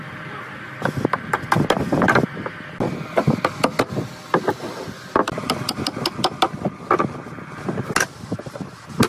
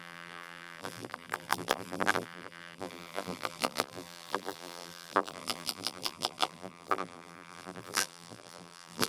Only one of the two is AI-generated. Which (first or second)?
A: second